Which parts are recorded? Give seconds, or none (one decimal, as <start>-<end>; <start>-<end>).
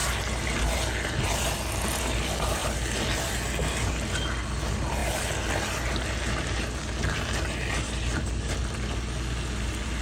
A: 0.0-10.0